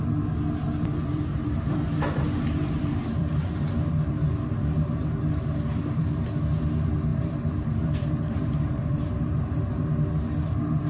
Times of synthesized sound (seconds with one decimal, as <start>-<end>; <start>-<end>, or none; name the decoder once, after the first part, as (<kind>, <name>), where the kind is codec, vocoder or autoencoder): 1.0-6.0 (vocoder, BigVGAN v2); 7.1-9.9